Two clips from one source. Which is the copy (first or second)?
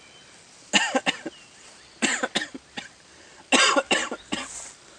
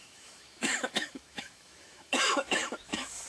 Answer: second